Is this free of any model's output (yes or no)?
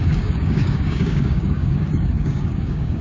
no